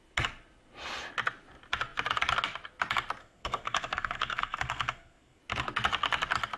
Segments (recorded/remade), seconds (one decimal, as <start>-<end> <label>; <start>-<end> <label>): 0.0-3.2 recorded; 3.2-5.4 remade; 5.4-6.6 recorded